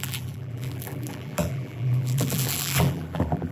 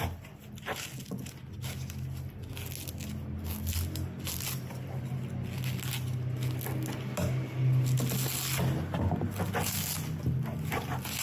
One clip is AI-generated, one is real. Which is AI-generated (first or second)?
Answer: first